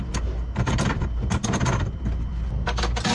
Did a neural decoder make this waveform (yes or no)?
no